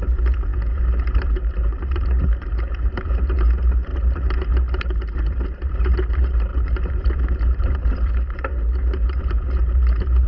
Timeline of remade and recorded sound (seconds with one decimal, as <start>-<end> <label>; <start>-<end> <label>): 0.0-0.5 remade; 0.5-1.0 recorded; 1.0-10.3 remade